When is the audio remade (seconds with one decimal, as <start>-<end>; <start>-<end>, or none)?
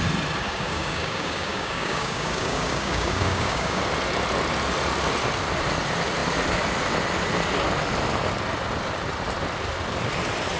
0.4-3.8